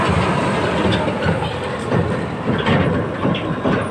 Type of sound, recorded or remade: recorded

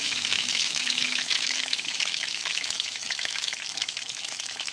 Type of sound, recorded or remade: remade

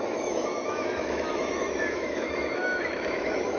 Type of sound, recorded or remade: remade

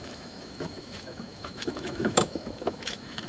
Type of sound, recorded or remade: remade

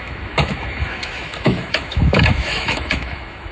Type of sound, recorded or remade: remade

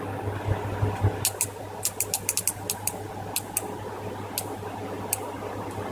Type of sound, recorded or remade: recorded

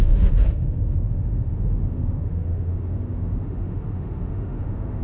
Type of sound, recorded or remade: remade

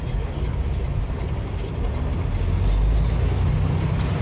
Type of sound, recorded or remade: recorded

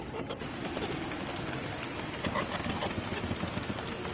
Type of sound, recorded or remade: recorded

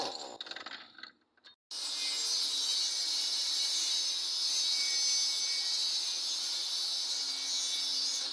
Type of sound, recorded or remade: recorded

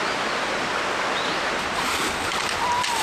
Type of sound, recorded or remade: recorded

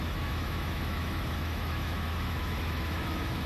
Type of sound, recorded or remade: remade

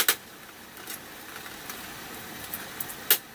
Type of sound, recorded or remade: recorded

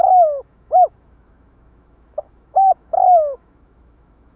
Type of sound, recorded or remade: remade